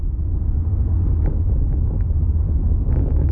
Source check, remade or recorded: remade